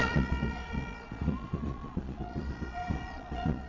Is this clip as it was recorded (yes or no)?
no